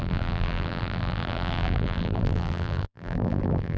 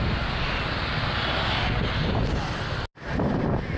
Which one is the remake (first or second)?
first